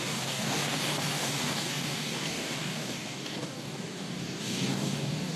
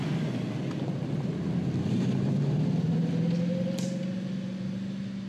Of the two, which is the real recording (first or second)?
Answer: second